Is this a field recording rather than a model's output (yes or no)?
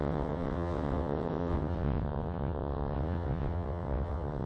no